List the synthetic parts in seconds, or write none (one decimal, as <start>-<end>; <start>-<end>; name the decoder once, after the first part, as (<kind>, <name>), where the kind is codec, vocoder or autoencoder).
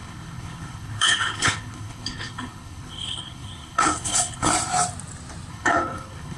0.0-4.5 (codec, HILCodec); 5.5-6.4